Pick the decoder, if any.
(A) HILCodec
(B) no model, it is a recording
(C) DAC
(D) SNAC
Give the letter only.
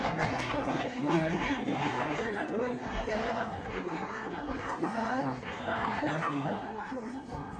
D